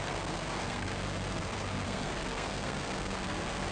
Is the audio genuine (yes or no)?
no